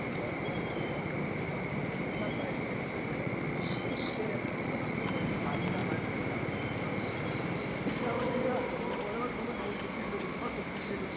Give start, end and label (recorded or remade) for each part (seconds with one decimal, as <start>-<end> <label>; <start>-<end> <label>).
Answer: 0.0-3.2 recorded; 3.2-5.0 remade; 5.0-11.2 recorded